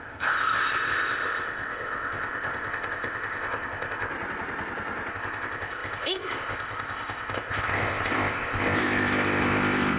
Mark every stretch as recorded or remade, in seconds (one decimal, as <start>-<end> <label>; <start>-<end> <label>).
0.0-4.1 remade; 4.1-5.1 recorded; 5.1-10.0 remade